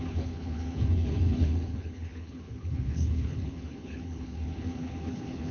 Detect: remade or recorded remade